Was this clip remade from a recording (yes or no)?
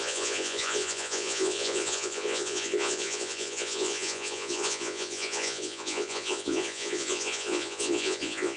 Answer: yes